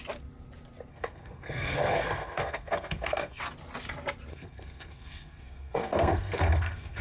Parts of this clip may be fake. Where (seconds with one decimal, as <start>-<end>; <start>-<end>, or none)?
0.9-3.4; 4.3-7.0